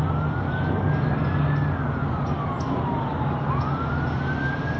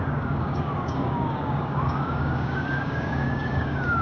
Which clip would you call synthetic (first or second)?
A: second